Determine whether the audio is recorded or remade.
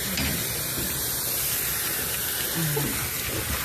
recorded